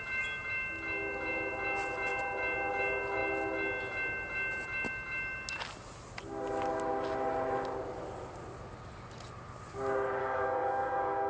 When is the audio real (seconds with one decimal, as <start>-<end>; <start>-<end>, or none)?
0.0-10.2